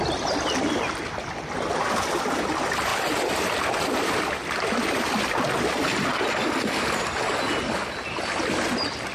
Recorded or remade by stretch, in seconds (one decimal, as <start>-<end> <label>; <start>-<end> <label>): 0.0-9.1 recorded